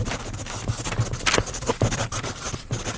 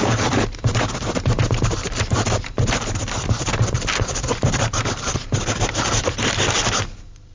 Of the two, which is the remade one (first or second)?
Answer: second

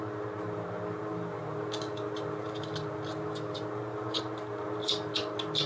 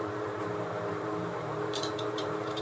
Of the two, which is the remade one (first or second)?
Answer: second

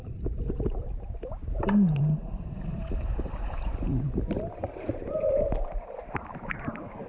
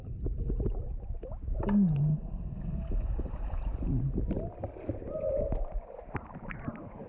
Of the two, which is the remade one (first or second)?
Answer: first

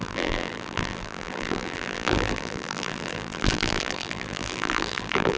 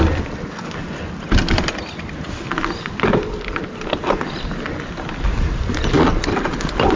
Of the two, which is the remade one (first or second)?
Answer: first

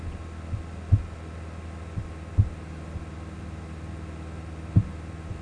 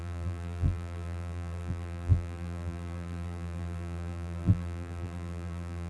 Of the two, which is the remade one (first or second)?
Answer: second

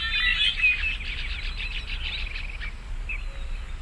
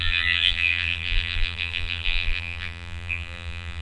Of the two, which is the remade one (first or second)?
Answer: second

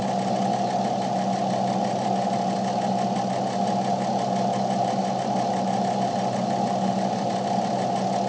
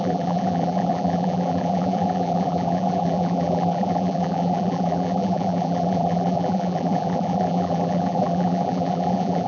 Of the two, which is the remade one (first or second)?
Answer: second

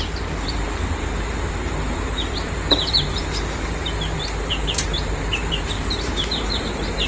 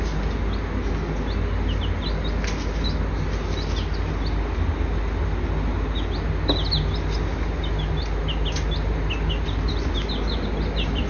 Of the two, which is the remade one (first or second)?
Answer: first